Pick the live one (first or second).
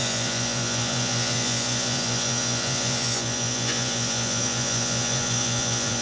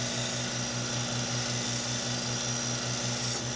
second